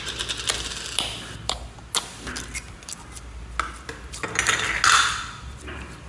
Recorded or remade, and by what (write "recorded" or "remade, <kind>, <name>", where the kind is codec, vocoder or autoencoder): recorded